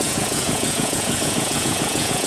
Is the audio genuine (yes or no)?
no